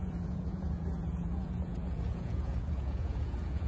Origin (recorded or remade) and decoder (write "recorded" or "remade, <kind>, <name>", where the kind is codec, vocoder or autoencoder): remade, vocoder, Vocos